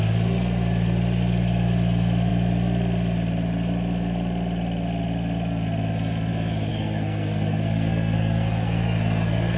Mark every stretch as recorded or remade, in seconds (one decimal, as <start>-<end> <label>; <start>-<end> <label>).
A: 0.0-6.7 recorded; 6.7-9.6 remade